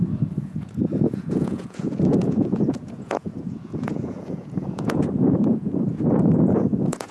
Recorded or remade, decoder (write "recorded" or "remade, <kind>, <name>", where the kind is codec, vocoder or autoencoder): remade, vocoder, Vocos